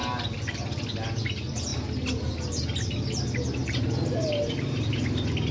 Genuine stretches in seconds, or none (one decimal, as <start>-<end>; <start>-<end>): 0.0-3.6; 4.9-5.5